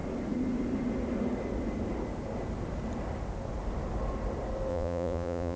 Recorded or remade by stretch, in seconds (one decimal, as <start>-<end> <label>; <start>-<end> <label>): 0.0-4.7 recorded; 4.7-5.6 remade